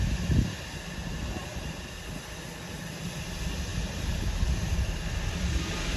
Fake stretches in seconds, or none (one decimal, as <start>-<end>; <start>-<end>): 1.0-1.9; 3.7-4.8